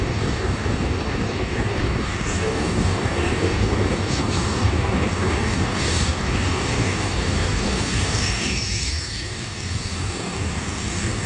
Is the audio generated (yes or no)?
yes